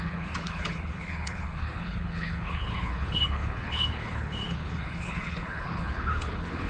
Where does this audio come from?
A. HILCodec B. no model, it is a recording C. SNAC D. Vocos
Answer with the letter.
A